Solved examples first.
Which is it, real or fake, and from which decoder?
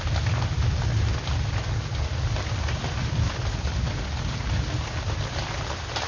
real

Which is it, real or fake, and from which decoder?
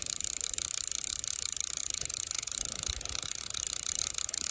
real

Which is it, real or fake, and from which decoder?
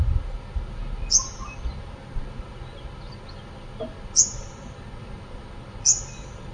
real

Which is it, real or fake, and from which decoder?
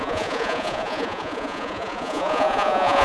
fake, vocoder, Vocos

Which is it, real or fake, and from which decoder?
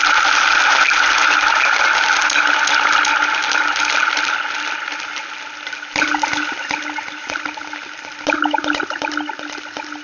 real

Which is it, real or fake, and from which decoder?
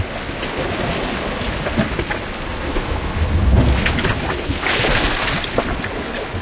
real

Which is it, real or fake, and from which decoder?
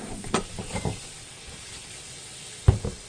real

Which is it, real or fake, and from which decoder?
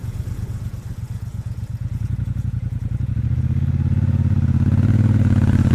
fake, vocoder, Vocos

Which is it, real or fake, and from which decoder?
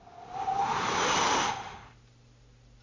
real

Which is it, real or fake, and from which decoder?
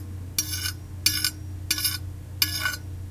real